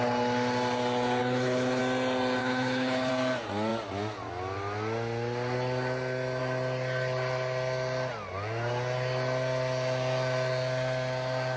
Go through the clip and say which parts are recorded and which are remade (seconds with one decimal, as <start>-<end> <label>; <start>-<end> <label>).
0.0-1.2 recorded; 1.2-1.8 remade; 1.8-2.4 recorded; 2.4-3.1 remade; 3.1-11.6 recorded